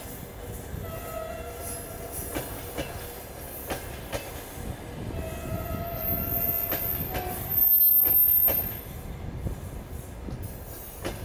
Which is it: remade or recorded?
recorded